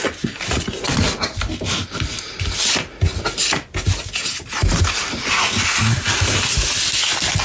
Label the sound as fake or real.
real